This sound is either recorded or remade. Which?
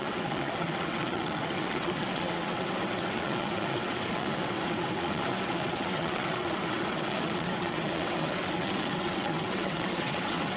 remade